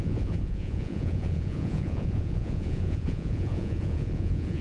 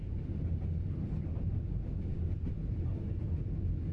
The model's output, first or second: first